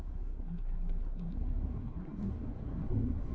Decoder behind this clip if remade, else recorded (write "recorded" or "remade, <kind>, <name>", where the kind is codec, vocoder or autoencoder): remade, codec, SNAC